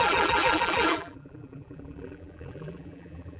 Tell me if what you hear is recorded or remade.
remade